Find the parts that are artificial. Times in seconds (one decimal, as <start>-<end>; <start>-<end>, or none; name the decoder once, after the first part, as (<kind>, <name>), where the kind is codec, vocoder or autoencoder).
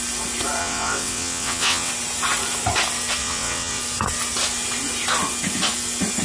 0.6-1.9 (vocoder, WaveNeXt); 3.2-3.8